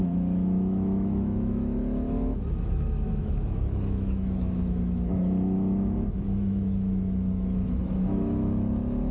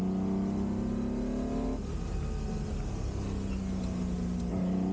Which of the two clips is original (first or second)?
second